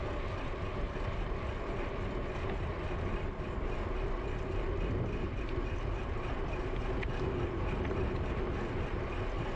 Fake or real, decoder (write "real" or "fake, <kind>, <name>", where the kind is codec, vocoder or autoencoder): real